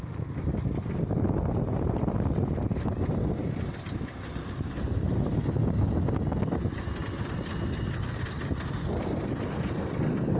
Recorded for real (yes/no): yes